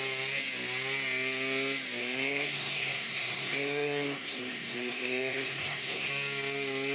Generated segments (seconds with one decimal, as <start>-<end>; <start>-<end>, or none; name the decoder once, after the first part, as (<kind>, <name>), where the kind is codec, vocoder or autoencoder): 2.0-6.1 (codec, SNAC)